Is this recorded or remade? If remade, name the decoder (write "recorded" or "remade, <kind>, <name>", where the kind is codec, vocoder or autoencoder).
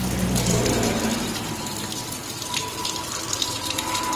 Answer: recorded